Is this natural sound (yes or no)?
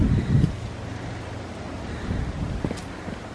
yes